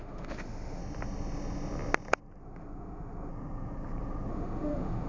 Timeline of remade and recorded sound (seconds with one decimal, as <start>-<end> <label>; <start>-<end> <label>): 0.0-0.8 remade; 0.8-2.4 recorded; 2.4-3.3 remade; 3.3-4.3 recorded; 4.3-5.1 remade